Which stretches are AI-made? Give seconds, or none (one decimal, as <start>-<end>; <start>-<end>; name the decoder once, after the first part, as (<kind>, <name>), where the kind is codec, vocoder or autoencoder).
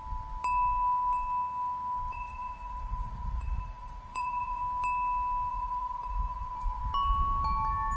2.1-4.6 (vocoder, Vocos); 5.5-6.8